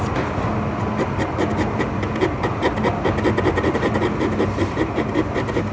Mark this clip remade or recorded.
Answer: recorded